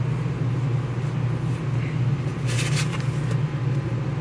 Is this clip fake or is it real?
real